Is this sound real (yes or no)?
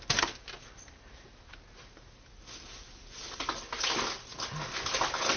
yes